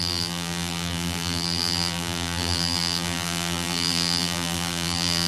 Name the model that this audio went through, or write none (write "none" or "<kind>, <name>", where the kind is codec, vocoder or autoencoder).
vocoder, BigVGAN v2